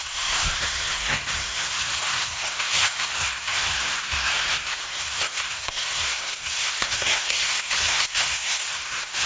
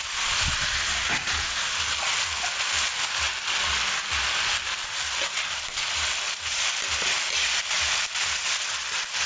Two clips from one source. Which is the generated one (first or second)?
first